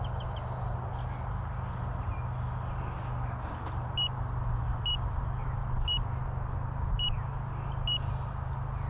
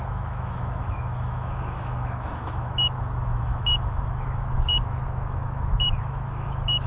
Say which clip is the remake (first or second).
second